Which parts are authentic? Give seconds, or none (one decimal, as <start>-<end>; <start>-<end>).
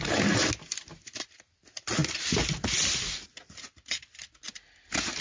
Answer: 0.0-5.2